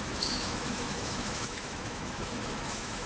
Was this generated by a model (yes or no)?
yes